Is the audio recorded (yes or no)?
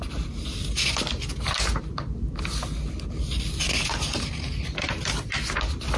yes